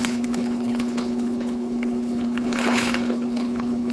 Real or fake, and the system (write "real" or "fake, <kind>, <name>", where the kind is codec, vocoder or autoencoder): fake, codec, HILCodec